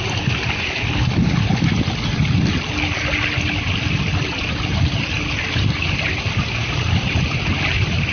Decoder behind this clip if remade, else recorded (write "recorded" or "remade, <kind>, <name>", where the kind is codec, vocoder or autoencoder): recorded